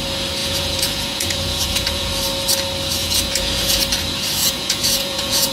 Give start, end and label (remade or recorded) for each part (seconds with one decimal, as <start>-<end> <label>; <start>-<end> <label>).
0.0-0.4 recorded; 0.4-2.1 remade; 2.1-3.0 recorded; 3.0-3.8 remade; 3.8-4.4 recorded; 4.4-5.5 remade